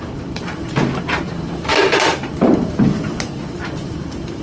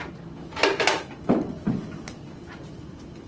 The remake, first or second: first